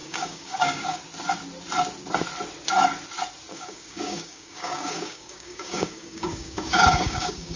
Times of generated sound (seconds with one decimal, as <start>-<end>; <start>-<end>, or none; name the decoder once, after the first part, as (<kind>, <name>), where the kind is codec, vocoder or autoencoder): 0.0-1.0 (codec, DAC); 3.5-7.6